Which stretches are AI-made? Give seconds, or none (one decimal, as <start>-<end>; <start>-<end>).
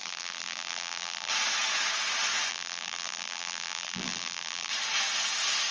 0.0-1.3; 2.5-4.7